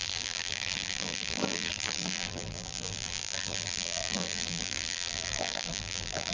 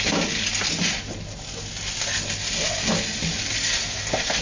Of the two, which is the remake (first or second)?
first